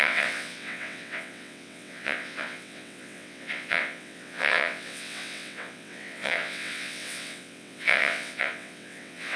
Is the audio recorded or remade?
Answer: remade